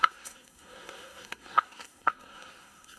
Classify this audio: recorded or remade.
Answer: remade